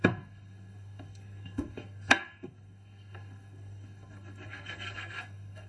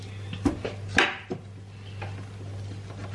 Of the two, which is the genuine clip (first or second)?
second